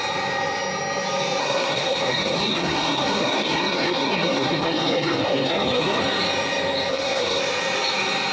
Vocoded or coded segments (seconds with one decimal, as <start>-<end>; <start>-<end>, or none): 1.4-6.0; 6.9-7.4

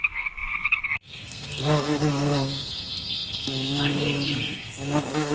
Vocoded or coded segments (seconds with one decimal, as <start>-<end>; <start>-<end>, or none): 0.0-5.3

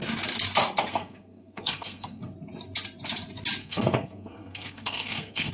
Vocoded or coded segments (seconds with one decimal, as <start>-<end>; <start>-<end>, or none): 0.9-2.2; 3.6-5.5

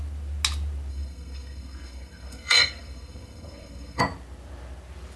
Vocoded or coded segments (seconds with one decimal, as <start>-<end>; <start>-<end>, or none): 0.9-4.0